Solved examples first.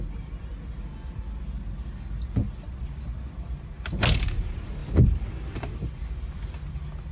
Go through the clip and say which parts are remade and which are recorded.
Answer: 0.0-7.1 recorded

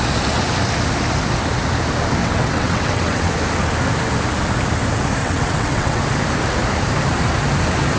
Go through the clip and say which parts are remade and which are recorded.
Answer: 0.0-2.2 recorded; 2.2-3.3 remade; 3.3-5.2 recorded; 5.2-6.0 remade; 6.0-8.0 recorded

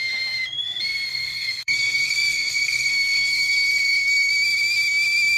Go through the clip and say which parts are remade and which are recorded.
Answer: 0.0-1.1 recorded; 1.1-4.3 remade; 4.3-5.4 recorded

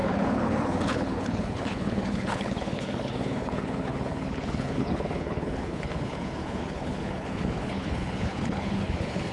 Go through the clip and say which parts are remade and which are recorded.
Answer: 0.0-9.3 remade

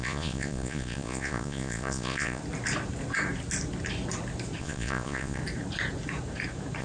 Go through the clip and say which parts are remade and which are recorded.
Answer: 0.0-2.4 remade; 2.4-4.6 recorded; 4.6-5.4 remade; 5.4-6.8 recorded

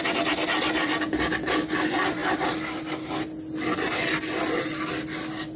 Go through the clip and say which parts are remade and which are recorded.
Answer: 0.0-5.6 recorded

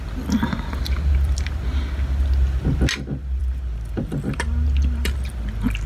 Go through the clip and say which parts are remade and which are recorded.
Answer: 0.0-3.4 recorded; 3.4-5.3 remade; 5.3-5.9 recorded

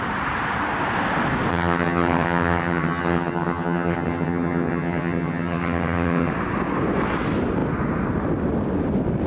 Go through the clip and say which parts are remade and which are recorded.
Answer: 0.0-1.5 recorded; 1.5-6.3 remade; 6.3-9.3 recorded